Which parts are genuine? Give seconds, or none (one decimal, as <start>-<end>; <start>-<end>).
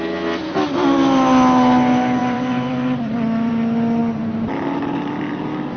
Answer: 0.0-2.2; 3.5-5.8